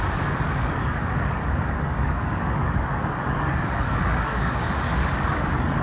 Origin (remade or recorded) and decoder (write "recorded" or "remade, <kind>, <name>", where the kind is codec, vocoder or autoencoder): remade, codec, DAC